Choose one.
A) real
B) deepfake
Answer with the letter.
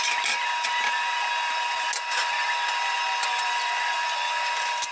A